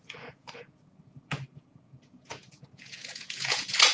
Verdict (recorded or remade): remade